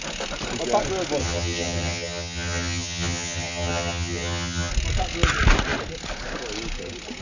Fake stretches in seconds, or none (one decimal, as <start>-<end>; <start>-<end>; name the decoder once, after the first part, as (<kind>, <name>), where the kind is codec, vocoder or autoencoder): 1.2-4.7 (vocoder, HiFi-GAN)